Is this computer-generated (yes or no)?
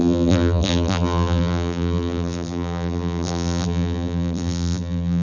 yes